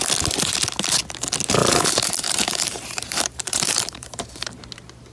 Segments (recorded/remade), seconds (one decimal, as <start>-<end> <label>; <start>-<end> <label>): 0.0-1.6 recorded; 1.6-4.6 remade; 4.6-5.1 recorded

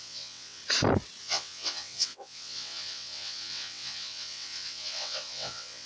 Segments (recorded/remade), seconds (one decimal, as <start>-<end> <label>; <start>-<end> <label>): 0.0-0.6 remade; 0.6-1.2 recorded; 1.2-5.9 remade

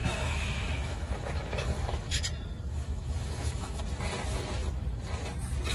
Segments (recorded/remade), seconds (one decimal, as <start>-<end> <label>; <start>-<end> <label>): 0.0-2.2 remade; 2.2-2.7 recorded; 2.7-3.8 remade; 3.8-5.7 recorded

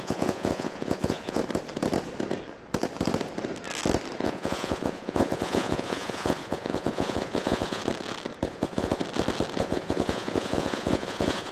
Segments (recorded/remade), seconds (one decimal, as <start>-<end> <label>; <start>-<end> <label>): 0.0-1.4 remade; 1.4-4.2 recorded; 4.2-7.8 remade; 7.8-8.5 recorded; 8.5-9.0 remade; 9.0-9.6 recorded; 9.6-11.5 remade